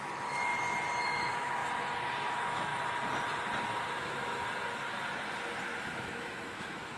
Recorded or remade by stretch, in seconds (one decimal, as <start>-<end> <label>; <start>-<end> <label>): 0.0-0.5 remade; 0.5-1.0 recorded; 1.0-1.6 remade; 1.6-2.3 recorded; 2.3-2.7 remade; 2.7-4.0 recorded; 4.0-4.4 remade; 4.4-5.8 recorded; 5.8-7.0 remade